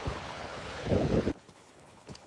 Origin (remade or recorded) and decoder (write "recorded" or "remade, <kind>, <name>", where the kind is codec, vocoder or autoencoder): remade, codec, HILCodec